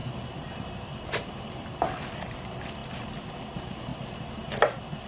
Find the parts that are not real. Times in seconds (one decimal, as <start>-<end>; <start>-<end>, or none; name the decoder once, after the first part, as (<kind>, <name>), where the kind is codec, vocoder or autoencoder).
1.4-2.8 (vocoder, BigVGAN v2); 3.4-3.9; 4.5-5.1